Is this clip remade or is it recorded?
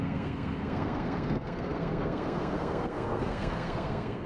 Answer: remade